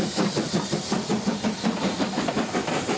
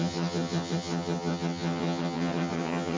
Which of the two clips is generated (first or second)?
second